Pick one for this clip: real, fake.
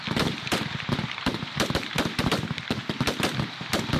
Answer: fake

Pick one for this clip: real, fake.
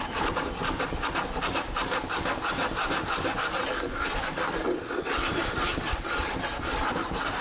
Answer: real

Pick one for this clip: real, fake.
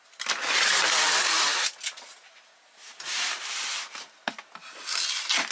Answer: real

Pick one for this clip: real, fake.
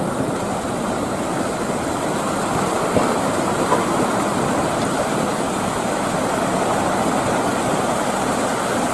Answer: fake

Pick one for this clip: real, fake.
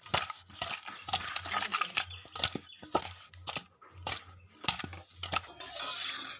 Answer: real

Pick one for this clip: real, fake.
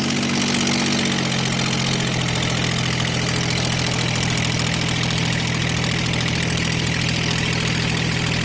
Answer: real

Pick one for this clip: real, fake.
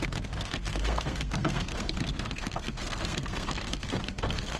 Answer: fake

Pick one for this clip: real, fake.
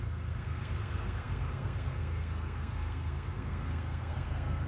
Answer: fake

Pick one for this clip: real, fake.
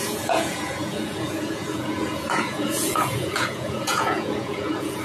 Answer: fake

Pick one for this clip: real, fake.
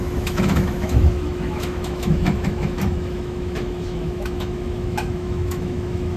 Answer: fake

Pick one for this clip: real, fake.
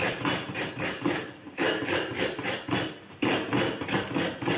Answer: real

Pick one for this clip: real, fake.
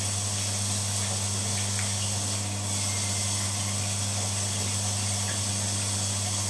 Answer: real